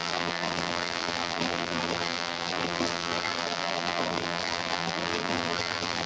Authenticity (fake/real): fake